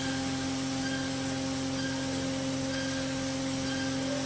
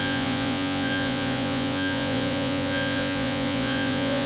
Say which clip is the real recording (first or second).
first